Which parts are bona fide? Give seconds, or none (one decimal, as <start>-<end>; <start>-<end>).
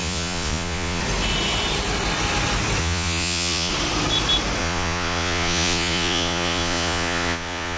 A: 1.0-2.8; 3.7-4.6